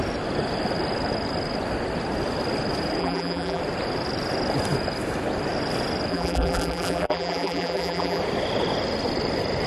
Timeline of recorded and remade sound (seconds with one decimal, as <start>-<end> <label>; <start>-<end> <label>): 0.0-3.0 recorded; 3.0-3.6 remade; 3.6-6.1 recorded; 6.1-8.2 remade; 8.2-9.7 recorded